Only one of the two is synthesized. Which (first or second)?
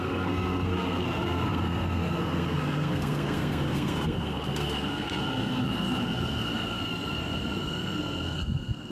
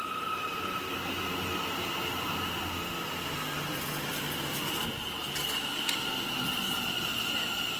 first